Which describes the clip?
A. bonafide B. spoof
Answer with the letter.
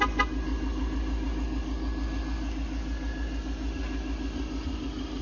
A